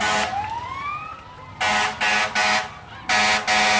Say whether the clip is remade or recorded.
recorded